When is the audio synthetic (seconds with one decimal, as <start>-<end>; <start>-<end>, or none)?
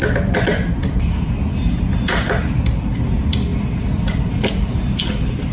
0.8-5.5